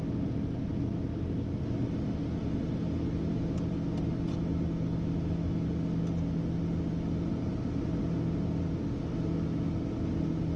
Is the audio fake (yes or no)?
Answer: no